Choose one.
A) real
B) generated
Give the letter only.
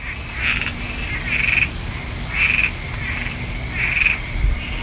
A